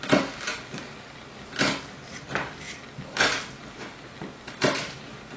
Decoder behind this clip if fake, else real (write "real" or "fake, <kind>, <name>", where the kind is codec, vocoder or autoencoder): real